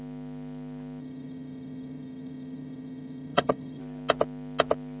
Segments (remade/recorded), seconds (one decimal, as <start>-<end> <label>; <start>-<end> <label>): 0.0-1.0 recorded; 1.0-3.8 remade; 3.8-5.0 recorded